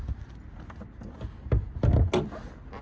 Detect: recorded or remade recorded